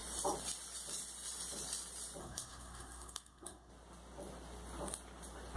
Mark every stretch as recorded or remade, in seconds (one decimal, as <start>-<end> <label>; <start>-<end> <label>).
0.0-2.2 recorded; 2.2-3.7 remade; 3.7-5.6 recorded